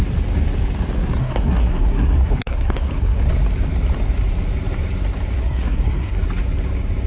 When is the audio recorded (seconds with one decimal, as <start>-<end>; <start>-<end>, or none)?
0.0-1.2; 3.2-5.4; 6.2-7.1